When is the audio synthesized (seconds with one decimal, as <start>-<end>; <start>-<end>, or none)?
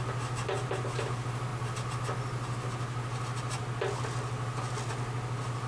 none